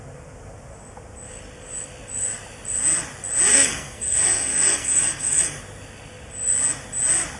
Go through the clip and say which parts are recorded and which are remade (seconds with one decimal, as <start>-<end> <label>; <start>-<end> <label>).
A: 0.0-3.5 recorded; 3.5-5.6 remade; 5.6-7.4 recorded